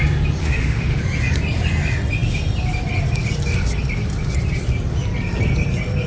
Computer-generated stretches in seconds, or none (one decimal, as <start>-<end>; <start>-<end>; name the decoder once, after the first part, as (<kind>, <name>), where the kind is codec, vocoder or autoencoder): 0.4-1.0 (autoencoder, DAC-VAE)